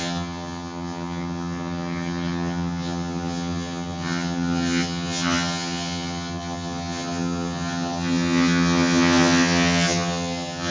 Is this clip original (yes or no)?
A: no